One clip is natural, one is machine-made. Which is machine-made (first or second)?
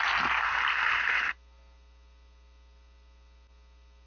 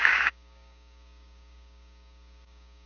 second